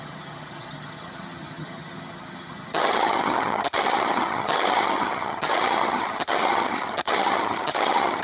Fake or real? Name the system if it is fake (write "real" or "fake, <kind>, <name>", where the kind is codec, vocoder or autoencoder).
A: fake, vocoder, HiFi-GAN